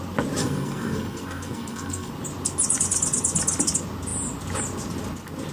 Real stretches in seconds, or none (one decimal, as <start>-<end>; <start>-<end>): 0.0-0.4; 2.1-5.5